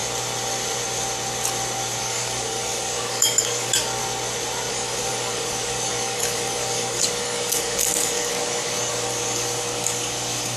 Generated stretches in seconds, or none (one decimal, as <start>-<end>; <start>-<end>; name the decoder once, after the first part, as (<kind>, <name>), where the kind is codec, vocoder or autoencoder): 2.0-4.0 (codec, DAC); 4.7-10.6